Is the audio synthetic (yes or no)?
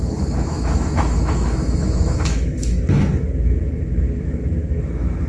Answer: yes